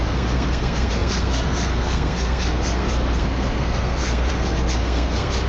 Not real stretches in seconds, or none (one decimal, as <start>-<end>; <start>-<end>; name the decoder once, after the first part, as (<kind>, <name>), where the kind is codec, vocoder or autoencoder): 0.0-5.5 (codec, SNAC)